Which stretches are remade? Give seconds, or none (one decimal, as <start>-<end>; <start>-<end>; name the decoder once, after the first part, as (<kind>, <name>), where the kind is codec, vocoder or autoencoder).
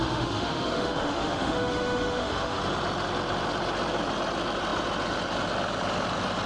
0.0-2.6 (autoencoder, DAC-VAE)